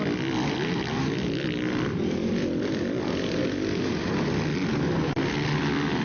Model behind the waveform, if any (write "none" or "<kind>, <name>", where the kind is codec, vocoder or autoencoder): none